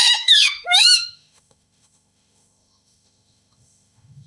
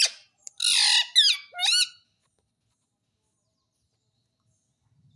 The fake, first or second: first